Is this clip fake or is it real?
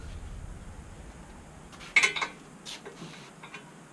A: real